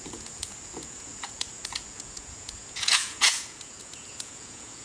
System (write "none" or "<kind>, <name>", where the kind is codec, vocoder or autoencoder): vocoder, Vocos